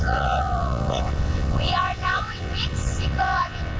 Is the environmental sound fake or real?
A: fake